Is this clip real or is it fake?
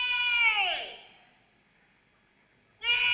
real